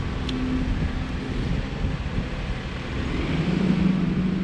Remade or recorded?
recorded